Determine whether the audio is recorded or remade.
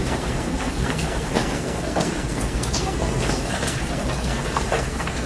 remade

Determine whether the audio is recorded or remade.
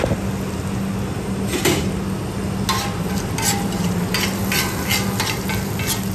recorded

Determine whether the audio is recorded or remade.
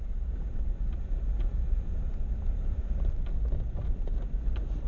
recorded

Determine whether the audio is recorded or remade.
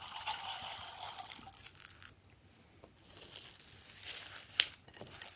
recorded